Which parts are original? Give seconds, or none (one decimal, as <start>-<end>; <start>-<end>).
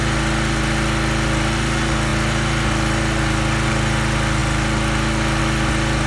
0.0-6.1